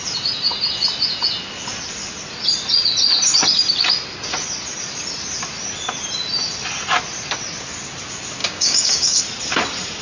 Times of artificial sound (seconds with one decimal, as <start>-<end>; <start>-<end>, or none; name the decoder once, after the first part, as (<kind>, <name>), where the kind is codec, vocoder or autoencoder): 8.4-9.2 (codec, DAC)